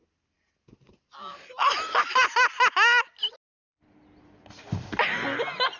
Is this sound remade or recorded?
recorded